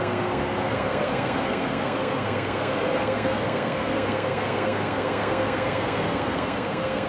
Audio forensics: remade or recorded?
remade